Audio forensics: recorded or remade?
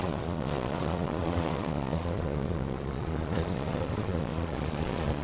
remade